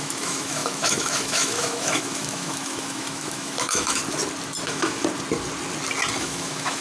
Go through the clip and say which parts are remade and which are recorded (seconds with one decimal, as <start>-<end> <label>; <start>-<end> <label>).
0.0-4.0 remade; 4.0-4.6 recorded; 4.6-5.0 remade; 5.0-6.2 recorded; 6.2-6.8 remade